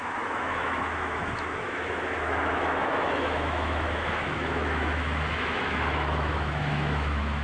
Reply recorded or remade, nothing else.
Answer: remade